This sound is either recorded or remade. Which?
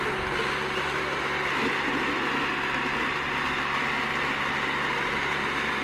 recorded